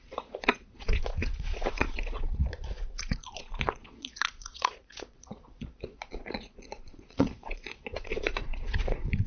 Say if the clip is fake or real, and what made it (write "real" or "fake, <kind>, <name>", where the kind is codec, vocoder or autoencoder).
fake, vocoder, Vocos